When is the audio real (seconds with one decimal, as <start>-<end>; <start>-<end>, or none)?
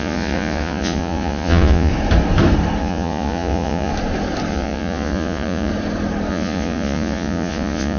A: 1.9-2.8; 3.9-4.5; 5.7-6.3